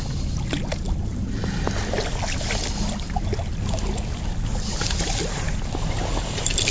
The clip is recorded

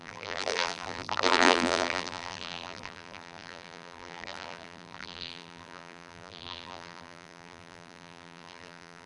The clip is remade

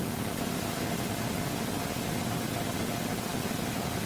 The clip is recorded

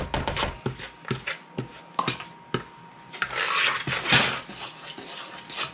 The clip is recorded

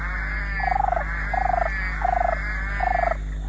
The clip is recorded